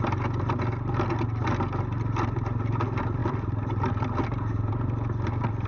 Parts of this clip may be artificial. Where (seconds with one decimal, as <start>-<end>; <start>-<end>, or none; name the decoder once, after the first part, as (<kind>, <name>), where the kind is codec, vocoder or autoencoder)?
3.2-4.7 (vocoder, BigVGAN v2)